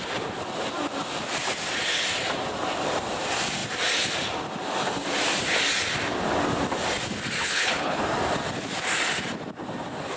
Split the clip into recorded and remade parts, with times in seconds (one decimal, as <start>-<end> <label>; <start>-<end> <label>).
0.0-7.4 recorded; 7.4-8.0 remade; 8.0-10.2 recorded